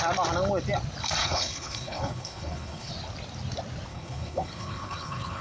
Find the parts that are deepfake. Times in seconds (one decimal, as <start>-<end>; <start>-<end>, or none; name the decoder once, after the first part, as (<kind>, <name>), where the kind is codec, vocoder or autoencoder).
1.2-2.9 (codec, HILCodec); 3.9-5.4

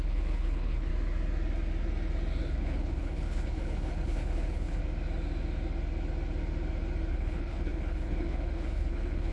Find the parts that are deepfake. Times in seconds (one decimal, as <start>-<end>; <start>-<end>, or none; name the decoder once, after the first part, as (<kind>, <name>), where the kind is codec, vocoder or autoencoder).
0.0-0.9 (codec, HILCodec); 2.4-4.8; 7.1-9.3

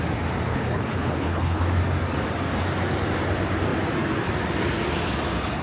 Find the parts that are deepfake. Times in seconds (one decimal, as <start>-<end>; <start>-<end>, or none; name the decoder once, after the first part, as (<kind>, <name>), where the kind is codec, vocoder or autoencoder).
0.5-1.6 (codec, HILCodec)

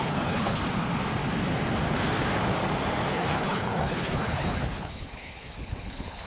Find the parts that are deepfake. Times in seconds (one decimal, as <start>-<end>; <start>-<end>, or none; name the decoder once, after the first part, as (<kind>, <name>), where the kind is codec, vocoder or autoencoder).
0.0-0.6 (codec, HILCodec); 3.1-6.3

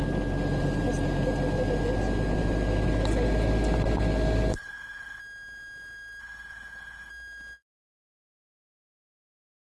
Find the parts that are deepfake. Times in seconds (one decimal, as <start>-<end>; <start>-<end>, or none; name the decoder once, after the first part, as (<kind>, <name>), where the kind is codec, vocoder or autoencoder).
4.5-5.2 (codec, HILCodec); 6.2-7.1

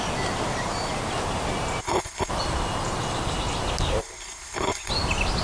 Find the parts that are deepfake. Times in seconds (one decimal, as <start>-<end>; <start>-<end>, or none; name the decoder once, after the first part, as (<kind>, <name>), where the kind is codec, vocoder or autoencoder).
1.8-2.3 (codec, HILCodec); 4.0-4.9

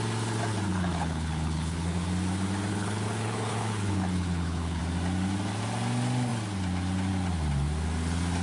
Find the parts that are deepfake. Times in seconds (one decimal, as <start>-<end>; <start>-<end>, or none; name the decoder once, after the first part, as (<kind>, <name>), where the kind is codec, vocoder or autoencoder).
0.7-2.1 (codec, HILCodec); 2.7-4.8

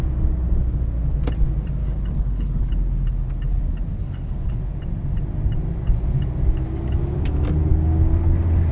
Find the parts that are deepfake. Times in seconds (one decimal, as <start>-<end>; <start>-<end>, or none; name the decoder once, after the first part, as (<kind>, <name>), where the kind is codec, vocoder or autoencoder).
1.8-2.7 (codec, HILCodec); 4.0-4.6